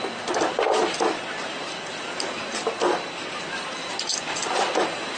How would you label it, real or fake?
real